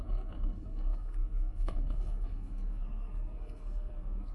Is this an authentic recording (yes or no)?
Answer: no